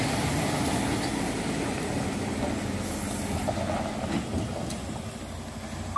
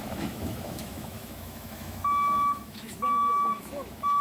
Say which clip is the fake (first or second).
second